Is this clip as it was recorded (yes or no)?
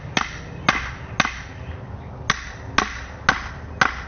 yes